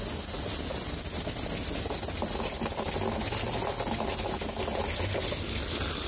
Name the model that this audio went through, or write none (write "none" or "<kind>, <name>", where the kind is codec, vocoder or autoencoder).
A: none